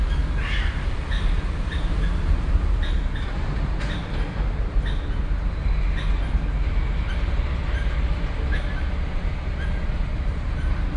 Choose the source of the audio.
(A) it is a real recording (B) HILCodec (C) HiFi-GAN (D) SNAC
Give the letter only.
A